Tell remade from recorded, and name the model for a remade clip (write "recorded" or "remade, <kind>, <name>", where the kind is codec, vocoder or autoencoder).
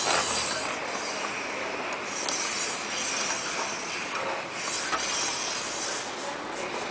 recorded